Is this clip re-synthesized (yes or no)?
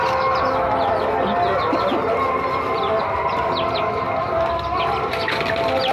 no